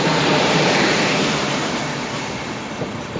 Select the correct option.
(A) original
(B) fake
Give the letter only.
B